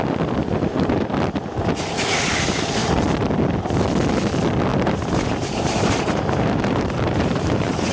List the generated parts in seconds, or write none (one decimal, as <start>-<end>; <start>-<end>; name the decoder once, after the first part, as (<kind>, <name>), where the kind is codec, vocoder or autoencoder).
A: 4.7-7.9 (vocoder, BigVGAN v2)